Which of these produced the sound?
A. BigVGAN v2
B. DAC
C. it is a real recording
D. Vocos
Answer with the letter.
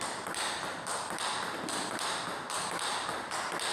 C